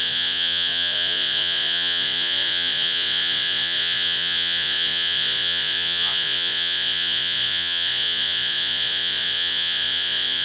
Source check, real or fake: fake